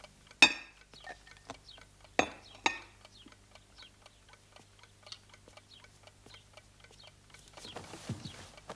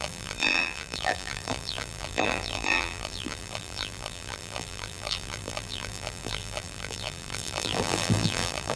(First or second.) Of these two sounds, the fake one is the second